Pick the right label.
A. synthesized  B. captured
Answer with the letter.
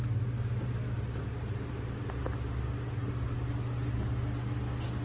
B